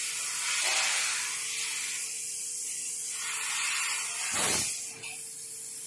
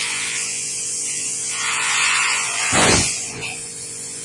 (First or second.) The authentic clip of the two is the first